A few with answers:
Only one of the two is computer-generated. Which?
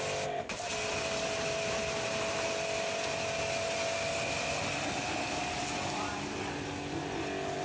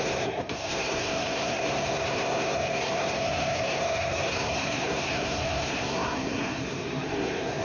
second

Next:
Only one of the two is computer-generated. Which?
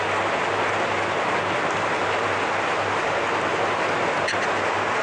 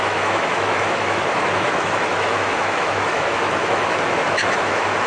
second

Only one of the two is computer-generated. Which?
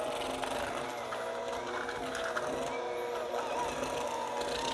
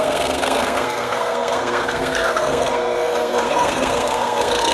second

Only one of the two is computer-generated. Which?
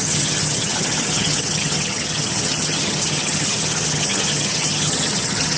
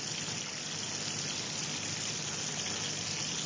first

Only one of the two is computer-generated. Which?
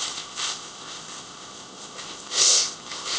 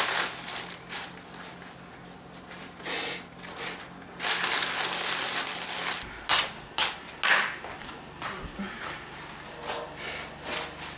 first